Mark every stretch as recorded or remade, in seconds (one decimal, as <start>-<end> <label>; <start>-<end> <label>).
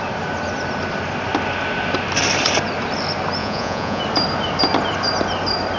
0.0-3.4 recorded; 3.4-4.0 remade; 4.0-5.8 recorded